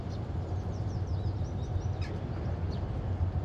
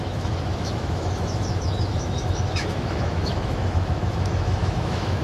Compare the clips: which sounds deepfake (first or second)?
second